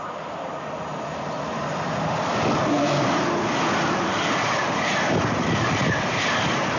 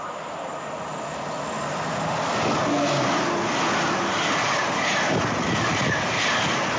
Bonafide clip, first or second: second